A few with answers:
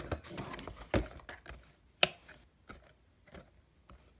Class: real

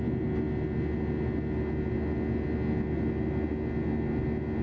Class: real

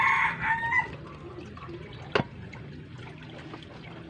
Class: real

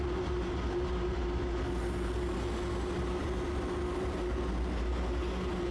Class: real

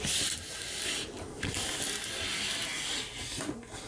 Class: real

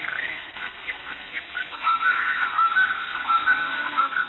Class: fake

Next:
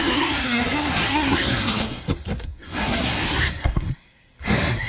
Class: fake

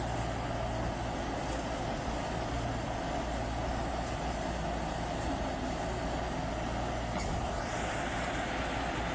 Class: real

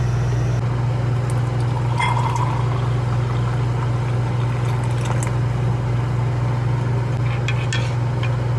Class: real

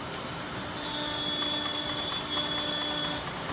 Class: real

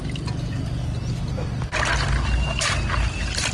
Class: real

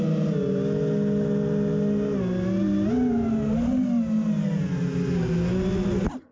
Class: real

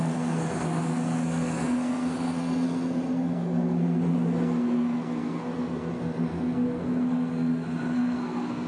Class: fake